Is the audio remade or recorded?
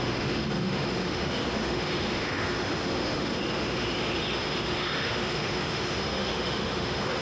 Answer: remade